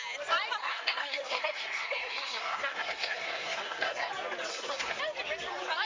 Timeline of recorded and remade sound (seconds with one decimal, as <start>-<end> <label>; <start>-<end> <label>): 0.0-0.6 recorded; 0.6-4.1 remade; 4.1-4.5 recorded; 4.5-5.0 remade; 5.0-5.8 recorded